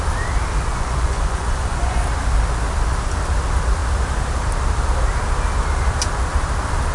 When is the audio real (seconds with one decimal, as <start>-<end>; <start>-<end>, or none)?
0.0-0.7; 2.0-6.9